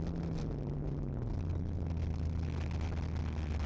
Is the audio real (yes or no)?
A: yes